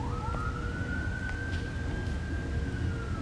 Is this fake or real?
real